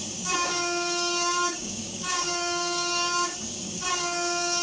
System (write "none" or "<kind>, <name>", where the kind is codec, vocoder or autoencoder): codec, DAC